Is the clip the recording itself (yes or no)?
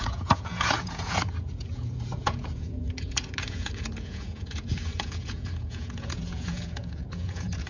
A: no